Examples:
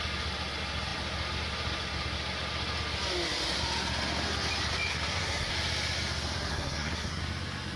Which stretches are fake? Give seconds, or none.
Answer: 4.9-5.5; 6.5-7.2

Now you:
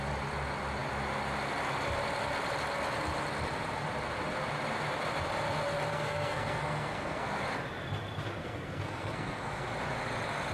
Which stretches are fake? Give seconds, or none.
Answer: 5.9-7.4; 8.4-9.7

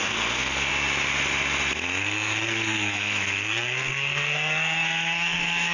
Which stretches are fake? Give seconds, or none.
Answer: 0.0-0.7; 2.0-5.7

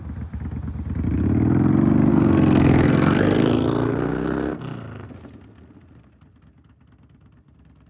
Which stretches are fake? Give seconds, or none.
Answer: 2.1-5.1

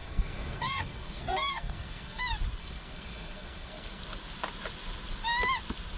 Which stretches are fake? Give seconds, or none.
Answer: 0.0-2.2; 2.6-4.0

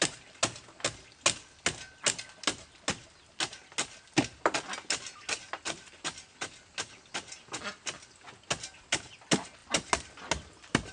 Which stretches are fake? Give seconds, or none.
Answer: none